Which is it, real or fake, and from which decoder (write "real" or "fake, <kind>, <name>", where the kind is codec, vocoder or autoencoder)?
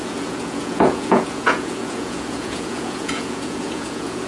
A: fake, vocoder, Vocos